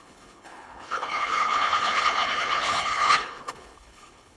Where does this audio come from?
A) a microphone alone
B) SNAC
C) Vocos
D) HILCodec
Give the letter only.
D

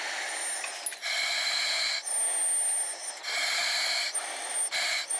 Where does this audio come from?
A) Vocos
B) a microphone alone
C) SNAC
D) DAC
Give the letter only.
B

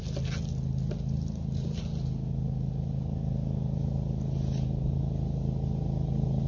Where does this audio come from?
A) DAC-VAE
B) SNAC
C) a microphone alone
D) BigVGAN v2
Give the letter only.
C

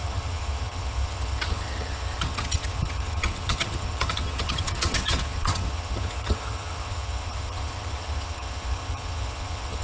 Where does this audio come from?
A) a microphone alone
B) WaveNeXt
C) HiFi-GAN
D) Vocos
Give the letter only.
C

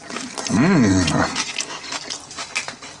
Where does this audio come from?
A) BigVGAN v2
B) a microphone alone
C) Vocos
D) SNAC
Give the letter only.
B